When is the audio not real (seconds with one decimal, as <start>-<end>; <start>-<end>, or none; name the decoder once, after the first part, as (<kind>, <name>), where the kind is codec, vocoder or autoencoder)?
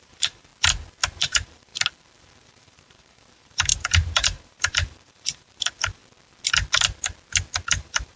0.0-0.5 (vocoder, BigVGAN v2); 1.2-1.7; 2.2-6.0; 7.6-8.2